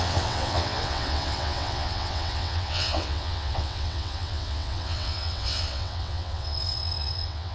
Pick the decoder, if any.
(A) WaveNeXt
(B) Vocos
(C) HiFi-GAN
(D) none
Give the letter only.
A